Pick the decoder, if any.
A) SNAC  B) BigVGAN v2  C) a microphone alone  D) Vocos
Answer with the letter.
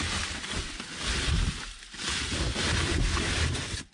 C